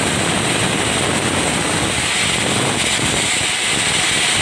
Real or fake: real